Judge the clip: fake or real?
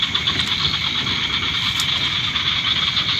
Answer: real